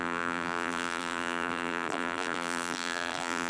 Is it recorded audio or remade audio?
remade